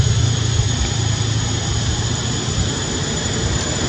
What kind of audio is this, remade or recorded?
remade